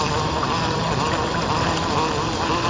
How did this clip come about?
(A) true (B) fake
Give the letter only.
B